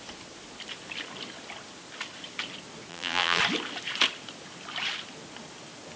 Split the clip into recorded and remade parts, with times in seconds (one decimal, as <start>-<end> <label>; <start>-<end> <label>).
0.0-2.9 recorded; 2.9-3.4 remade; 3.4-6.0 recorded